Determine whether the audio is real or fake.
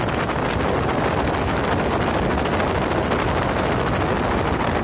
real